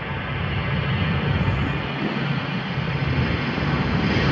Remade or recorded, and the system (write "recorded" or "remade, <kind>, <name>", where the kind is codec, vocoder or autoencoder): recorded